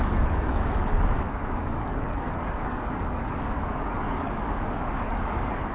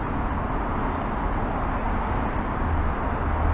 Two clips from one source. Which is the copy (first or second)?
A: first